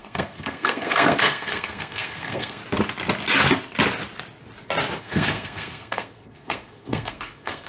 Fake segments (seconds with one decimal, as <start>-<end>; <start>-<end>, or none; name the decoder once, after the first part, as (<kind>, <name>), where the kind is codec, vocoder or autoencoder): 0.0-2.6 (codec, SNAC); 5.0-7.7